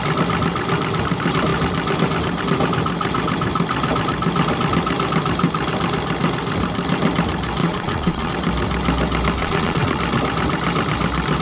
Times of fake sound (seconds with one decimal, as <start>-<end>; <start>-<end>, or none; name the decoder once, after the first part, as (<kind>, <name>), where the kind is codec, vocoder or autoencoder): 7.6-8.3 (vocoder, Vocos); 9.4-10.0